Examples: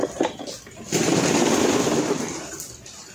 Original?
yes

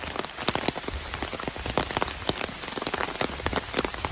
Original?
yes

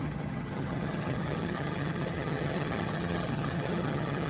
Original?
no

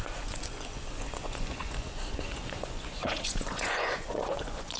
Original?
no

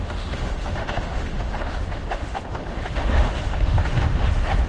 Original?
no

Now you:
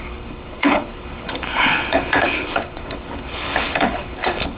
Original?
no